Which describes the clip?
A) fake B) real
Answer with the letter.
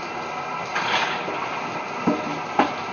B